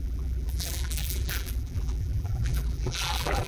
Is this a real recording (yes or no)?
no